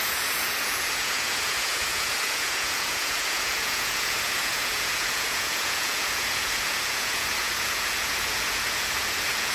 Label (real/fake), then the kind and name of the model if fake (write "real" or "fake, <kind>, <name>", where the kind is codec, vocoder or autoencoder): fake, vocoder, Vocos